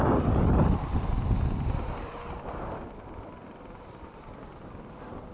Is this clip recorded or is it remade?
recorded